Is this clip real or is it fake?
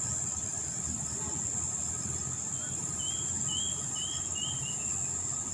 real